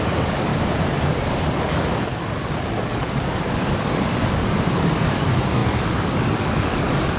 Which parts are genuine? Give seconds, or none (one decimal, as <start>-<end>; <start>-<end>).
0.5-1.2